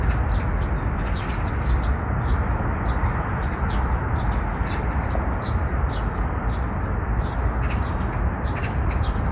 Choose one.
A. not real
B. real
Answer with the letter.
B